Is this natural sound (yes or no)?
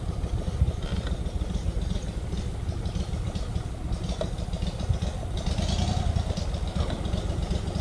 yes